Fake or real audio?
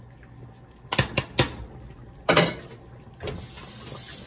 real